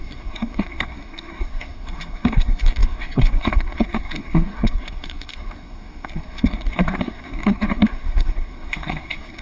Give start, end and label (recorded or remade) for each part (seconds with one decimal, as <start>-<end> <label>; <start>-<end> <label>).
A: 0.0-9.4 remade